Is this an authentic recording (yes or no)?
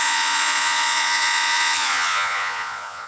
no